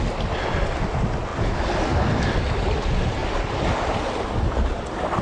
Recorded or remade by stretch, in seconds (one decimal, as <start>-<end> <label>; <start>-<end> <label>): 0.0-5.2 recorded